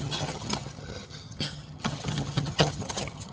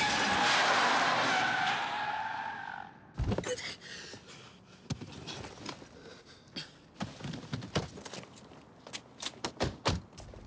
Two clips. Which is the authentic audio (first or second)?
second